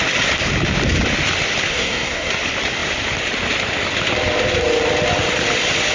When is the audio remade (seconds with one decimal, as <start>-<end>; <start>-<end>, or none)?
1.7-2.3